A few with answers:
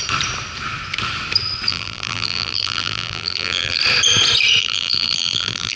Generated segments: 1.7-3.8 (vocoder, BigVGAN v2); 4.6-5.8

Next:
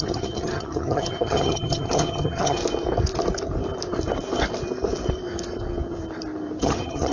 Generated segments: 0.0-2.6 (vocoder, HiFi-GAN); 6.6-7.1

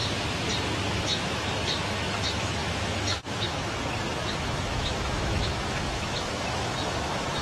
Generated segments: 0.8-7.4 (autoencoder, DAC-VAE)

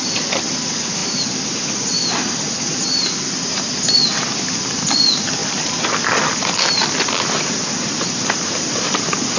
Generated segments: none